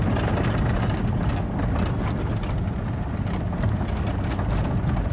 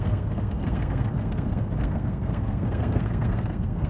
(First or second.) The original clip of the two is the first